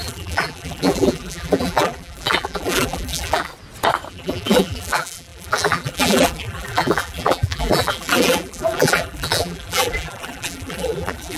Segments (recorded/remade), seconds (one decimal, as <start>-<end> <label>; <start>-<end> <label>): 0.0-3.5 remade; 3.5-4.1 recorded; 4.1-11.4 remade